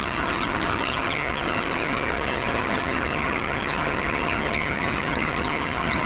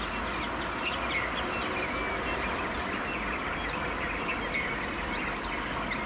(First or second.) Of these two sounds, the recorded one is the second